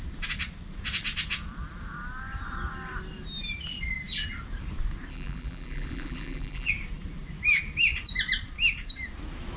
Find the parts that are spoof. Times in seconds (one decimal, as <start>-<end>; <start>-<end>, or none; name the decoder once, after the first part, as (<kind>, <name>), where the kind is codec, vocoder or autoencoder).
5.1-6.7 (vocoder, BigVGAN v2)